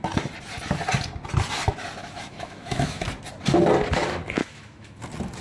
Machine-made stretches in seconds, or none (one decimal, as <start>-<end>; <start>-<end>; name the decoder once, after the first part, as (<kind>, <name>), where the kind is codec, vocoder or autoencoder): 2.0-3.0 (autoencoder, DAC-VAE); 4.4-5.0